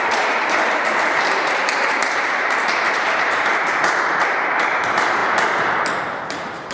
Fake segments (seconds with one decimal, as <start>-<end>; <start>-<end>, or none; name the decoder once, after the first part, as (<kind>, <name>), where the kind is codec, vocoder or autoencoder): 0.0-6.7 (vocoder, BigVGAN v2)